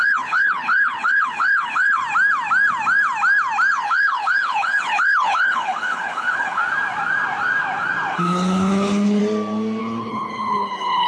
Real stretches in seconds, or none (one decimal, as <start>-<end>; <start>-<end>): 2.0-3.7; 6.6-8.1; 9.2-9.8